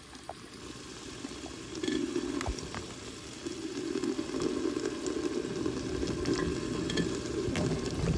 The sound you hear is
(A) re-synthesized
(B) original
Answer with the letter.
B